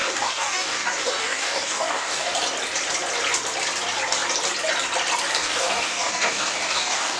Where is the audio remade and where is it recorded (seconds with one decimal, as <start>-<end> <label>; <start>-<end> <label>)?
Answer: 0.0-2.3 remade; 2.3-5.3 recorded; 5.3-7.2 remade